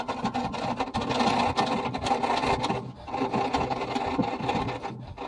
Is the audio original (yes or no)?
yes